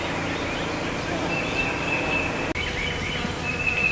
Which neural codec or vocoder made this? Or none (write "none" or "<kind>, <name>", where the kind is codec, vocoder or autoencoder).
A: none